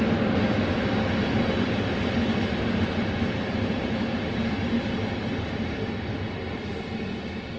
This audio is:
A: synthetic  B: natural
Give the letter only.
B